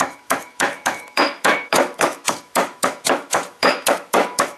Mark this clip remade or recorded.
remade